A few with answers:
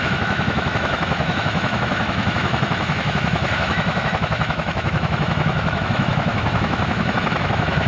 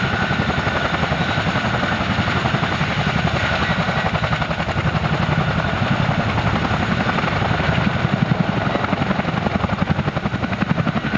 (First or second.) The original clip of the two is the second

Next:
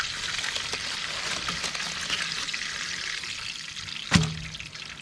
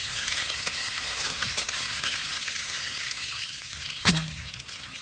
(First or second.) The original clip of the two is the first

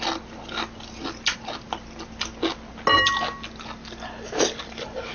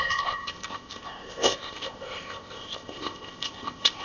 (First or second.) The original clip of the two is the first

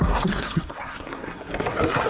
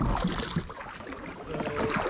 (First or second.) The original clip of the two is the second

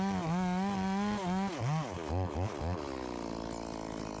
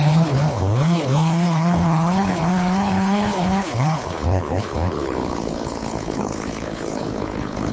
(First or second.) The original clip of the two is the first